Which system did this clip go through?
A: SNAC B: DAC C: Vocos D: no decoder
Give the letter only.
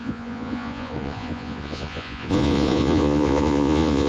C